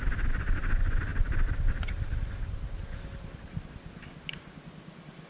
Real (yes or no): yes